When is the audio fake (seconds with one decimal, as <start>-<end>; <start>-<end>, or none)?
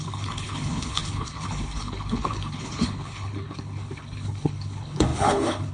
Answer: 0.0-5.7